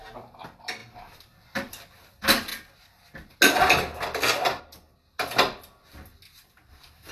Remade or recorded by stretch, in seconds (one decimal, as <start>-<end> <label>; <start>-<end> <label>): 0.0-0.8 recorded; 0.8-1.7 remade; 1.7-7.1 recorded